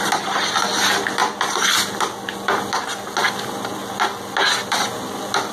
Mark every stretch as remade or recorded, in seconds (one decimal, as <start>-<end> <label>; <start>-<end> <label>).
0.0-5.5 recorded